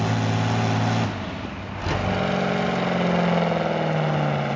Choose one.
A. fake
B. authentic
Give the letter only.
B